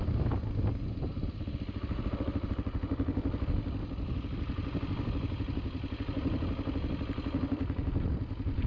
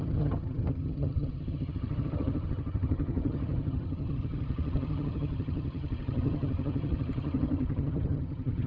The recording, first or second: first